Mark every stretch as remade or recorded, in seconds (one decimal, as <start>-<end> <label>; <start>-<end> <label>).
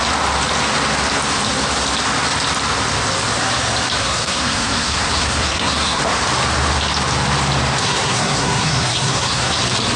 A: 0.0-4.0 recorded; 4.0-6.0 remade; 6.0-7.8 recorded; 7.8-9.6 remade; 9.6-10.0 recorded